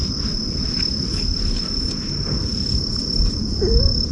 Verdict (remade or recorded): recorded